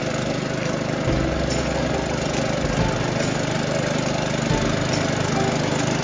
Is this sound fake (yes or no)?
no